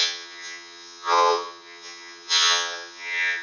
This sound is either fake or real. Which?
fake